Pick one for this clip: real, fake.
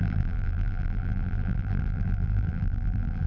fake